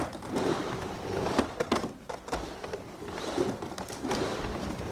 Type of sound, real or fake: real